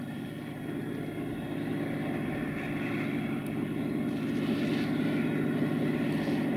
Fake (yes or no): no